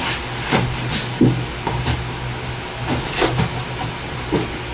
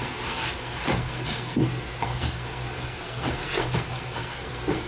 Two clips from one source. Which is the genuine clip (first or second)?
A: first